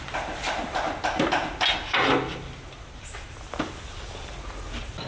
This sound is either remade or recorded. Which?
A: recorded